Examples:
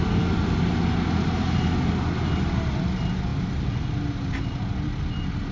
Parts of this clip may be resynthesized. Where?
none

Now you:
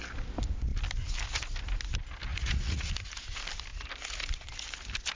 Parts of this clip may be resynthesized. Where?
2.3-2.9 (vocoder, Vocos)